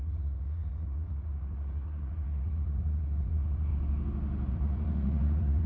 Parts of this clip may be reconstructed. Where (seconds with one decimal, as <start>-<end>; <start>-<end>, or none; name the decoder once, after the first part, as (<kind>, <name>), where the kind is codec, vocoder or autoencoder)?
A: 0.0-3.7 (vocoder, Vocos); 4.5-5.7